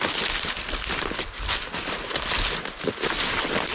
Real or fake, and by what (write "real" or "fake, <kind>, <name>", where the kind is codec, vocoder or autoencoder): real